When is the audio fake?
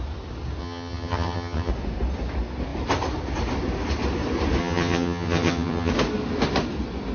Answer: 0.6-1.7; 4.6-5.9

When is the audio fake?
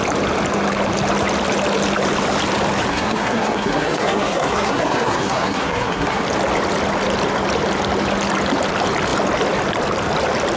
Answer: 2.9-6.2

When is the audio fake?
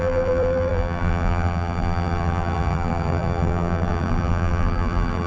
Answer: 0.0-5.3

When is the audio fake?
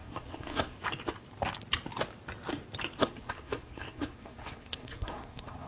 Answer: 0.0-0.8; 3.0-5.7